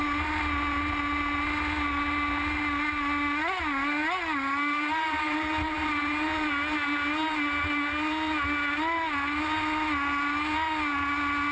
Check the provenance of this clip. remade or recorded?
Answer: recorded